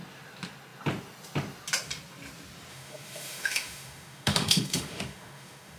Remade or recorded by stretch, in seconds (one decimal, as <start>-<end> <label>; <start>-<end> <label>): 0.0-2.7 recorded; 2.7-5.8 remade